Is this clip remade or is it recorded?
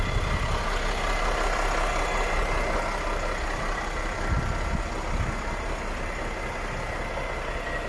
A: recorded